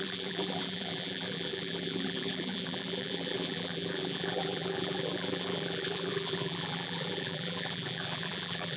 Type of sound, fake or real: fake